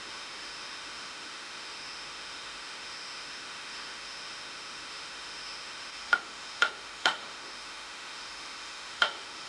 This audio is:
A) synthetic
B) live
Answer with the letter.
A